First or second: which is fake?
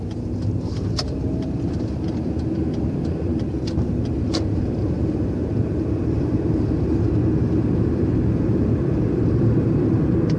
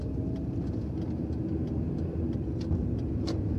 first